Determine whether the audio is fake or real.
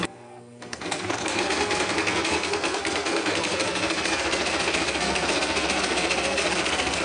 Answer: fake